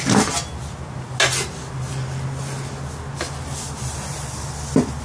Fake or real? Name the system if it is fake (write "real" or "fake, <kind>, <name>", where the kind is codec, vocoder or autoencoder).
real